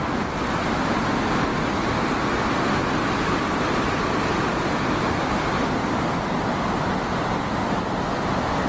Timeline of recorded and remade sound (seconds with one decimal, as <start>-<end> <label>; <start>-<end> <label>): 0.0-8.7 recorded